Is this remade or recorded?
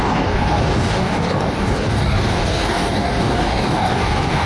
remade